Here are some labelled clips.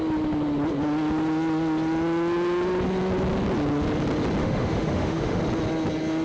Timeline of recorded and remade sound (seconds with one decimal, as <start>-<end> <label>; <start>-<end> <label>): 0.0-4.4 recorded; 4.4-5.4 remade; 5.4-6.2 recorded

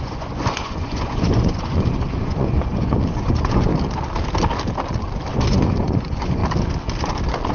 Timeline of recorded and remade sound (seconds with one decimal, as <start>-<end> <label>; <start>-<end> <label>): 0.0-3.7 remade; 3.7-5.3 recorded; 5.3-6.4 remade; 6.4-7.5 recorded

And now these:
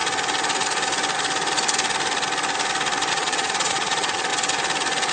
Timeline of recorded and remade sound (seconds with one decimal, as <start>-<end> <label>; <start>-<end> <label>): 0.0-3.1 recorded; 3.1-4.3 remade; 4.3-5.1 recorded

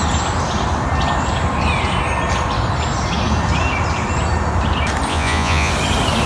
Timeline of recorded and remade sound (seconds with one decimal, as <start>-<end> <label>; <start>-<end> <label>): 0.0-5.1 recorded; 5.1-5.7 remade; 5.7-6.3 recorded

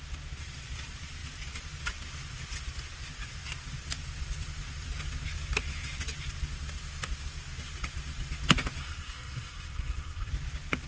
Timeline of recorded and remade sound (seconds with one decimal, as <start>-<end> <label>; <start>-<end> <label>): 0.0-8.8 recorded; 8.8-10.3 remade; 10.3-10.9 recorded

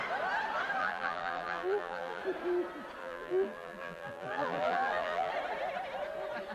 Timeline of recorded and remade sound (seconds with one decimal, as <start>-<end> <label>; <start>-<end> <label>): 0.0-0.8 recorded; 0.8-2.2 remade; 2.2-3.0 recorded; 3.0-5.3 remade; 5.3-6.5 recorded

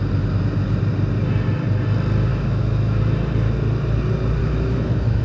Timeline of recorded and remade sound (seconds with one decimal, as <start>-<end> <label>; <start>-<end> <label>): 0.0-2.3 recorded; 2.3-3.0 remade; 3.0-4.4 recorded; 4.4-5.2 remade